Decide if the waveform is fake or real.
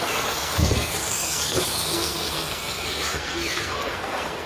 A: fake